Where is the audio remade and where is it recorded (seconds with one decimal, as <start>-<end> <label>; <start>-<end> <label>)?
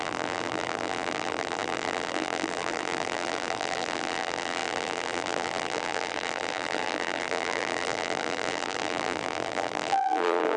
0.0-10.6 remade